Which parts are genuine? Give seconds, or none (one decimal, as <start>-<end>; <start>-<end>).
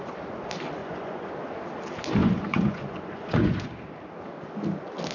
0.0-0.8; 1.3-2.2; 3.7-5.1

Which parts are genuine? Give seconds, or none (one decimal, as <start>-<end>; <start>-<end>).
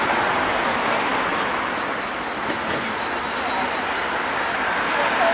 0.0-5.3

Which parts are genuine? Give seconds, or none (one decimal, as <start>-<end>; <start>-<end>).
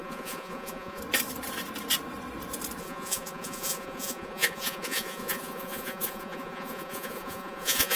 1.0-2.8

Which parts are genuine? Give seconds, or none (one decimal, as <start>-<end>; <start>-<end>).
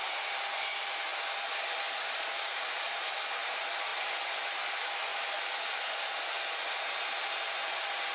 0.0-8.1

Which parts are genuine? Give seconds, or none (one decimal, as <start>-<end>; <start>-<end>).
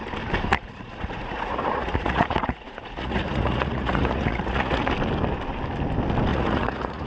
0.0-0.5; 4.8-6.3